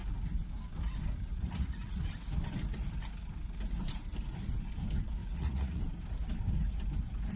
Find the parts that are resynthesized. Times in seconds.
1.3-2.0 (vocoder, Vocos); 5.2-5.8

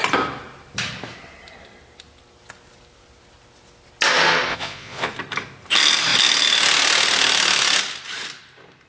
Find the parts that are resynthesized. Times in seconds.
4.5-5.1 (vocoder, Vocos)

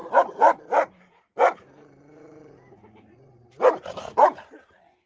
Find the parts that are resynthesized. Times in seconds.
0.0-5.1 (vocoder, BigVGAN v2)

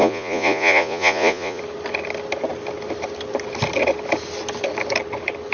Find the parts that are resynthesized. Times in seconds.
0.0-1.6 (vocoder, Vocos)

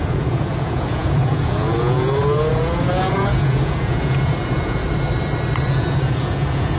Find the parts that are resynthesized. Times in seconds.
0.0-4.8 (vocoder, Vocos); 5.6-6.8